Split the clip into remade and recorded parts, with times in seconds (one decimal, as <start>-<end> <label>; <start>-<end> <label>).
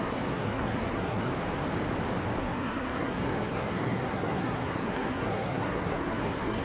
0.0-1.3 remade; 1.3-2.4 recorded; 2.4-6.6 remade